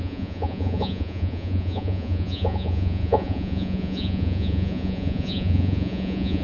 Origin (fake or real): fake